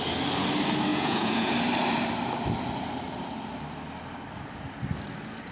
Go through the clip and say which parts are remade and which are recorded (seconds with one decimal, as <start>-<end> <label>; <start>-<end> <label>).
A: 0.0-0.9 recorded; 0.9-1.5 remade; 1.5-5.5 recorded

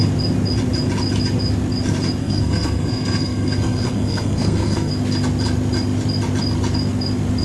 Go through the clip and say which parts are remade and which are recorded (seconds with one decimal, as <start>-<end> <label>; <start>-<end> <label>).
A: 0.0-2.2 recorded; 2.2-4.9 remade; 4.9-7.4 recorded

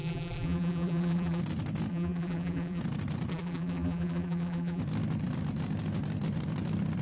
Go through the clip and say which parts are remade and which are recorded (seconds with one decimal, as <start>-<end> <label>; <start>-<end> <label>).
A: 0.0-1.4 remade; 1.4-1.9 recorded; 1.9-2.8 remade; 2.8-3.3 recorded; 3.3-4.8 remade; 4.8-7.0 recorded

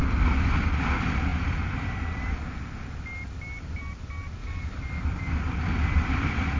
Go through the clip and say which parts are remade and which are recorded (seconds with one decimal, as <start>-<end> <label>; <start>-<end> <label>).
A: 0.0-6.6 recorded

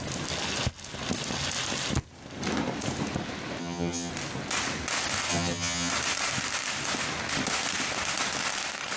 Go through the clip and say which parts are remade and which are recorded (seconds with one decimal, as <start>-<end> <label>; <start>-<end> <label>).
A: 0.0-3.6 recorded; 3.6-4.1 remade; 4.1-5.3 recorded; 5.3-5.9 remade; 5.9-9.0 recorded